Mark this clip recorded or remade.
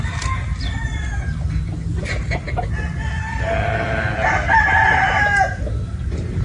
recorded